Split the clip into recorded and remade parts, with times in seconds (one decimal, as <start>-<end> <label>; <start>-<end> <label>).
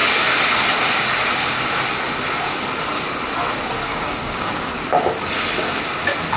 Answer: 0.0-3.9 recorded; 3.9-4.7 remade; 4.7-6.4 recorded